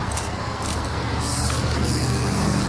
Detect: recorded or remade remade